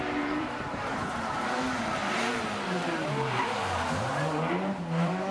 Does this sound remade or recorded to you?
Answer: remade